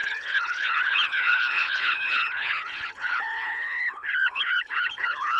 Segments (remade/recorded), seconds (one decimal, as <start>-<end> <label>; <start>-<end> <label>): 0.0-5.4 remade